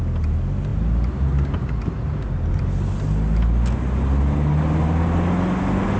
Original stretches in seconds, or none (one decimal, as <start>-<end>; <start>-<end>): 0.0-6.0